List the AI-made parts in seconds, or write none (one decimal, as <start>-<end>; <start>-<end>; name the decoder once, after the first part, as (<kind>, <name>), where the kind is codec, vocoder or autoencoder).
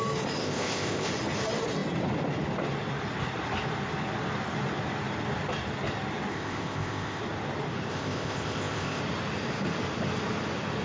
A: 0.4-1.1 (codec, ZipCodec); 6.3-7.2; 7.9-9.0